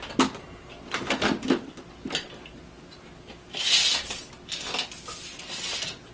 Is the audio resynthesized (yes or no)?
no